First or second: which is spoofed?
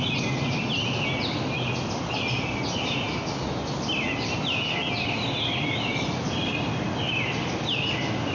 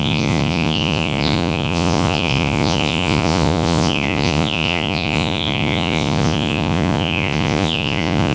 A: second